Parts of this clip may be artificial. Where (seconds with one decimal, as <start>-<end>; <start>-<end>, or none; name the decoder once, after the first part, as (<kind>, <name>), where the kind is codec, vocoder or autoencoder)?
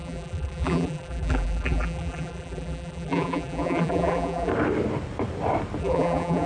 0.0-4.5 (vocoder, BigVGAN v2); 5.8-6.5